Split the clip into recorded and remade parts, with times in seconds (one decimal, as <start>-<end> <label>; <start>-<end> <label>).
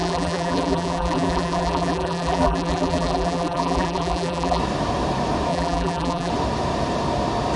0.0-4.6 remade; 4.6-5.5 recorded; 5.5-6.3 remade; 6.3-7.6 recorded